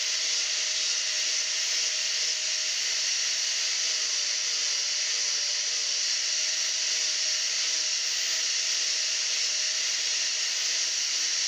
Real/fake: real